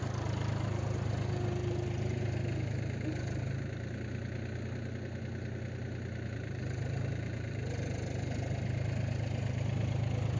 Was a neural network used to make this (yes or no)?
no